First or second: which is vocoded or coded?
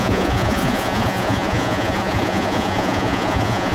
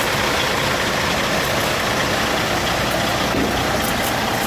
first